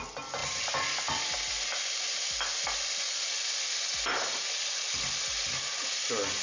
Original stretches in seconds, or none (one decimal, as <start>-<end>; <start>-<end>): 0.0-6.4